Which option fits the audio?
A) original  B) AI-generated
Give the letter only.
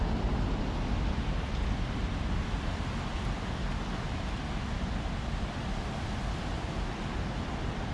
A